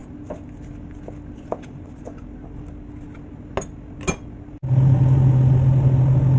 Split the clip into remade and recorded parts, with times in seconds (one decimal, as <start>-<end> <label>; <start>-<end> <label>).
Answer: 0.0-6.4 recorded